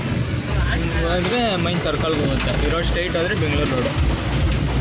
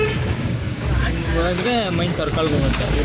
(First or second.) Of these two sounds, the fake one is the second